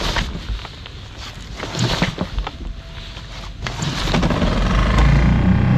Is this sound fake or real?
real